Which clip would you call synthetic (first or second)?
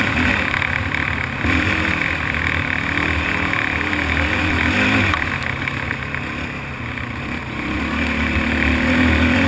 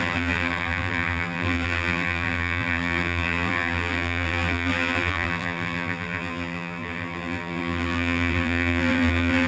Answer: second